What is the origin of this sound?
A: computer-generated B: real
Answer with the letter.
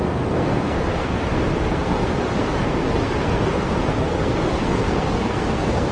A